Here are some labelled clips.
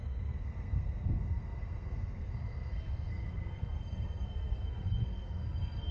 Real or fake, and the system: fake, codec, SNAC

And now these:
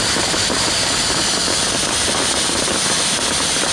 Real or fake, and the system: real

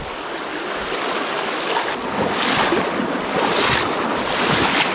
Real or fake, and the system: real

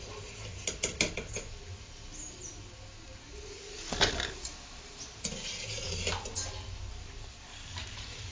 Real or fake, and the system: real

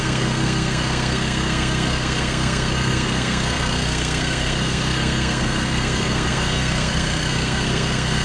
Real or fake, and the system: fake, codec, SNAC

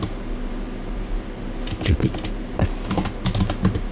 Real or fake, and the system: real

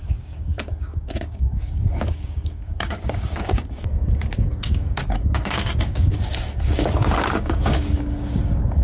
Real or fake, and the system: fake, codec, DAC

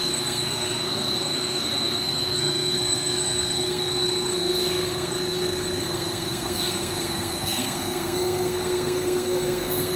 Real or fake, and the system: fake, codec, SNAC